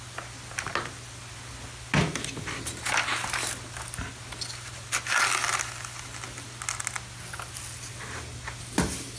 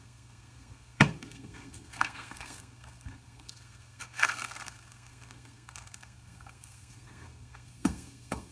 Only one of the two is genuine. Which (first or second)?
first